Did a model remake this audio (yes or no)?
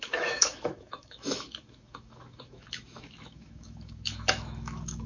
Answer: yes